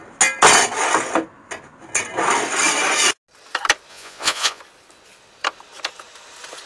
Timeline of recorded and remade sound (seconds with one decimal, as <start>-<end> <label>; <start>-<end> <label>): 0.0-3.9 recorded; 3.9-4.6 remade; 4.6-6.7 recorded